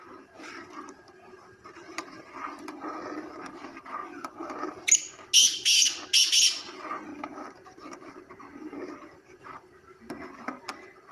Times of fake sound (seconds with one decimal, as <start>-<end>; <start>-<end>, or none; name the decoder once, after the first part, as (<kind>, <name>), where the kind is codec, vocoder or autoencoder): 4.0-4.7 (vocoder, BigVGAN v2); 7.1-8.3